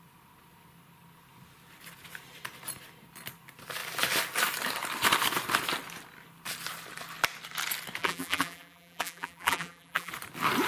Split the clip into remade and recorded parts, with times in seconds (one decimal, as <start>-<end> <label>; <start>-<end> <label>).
0.0-8.0 recorded; 8.0-10.1 remade; 10.1-10.7 recorded